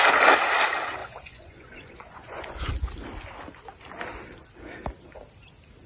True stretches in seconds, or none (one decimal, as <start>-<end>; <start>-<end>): 0.0-1.0; 2.7-5.9